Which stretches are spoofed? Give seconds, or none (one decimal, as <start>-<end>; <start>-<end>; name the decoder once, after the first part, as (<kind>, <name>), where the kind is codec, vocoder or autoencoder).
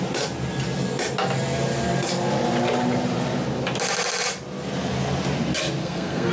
5.8-6.3 (codec, SNAC)